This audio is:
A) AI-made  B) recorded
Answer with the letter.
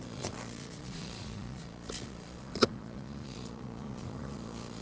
A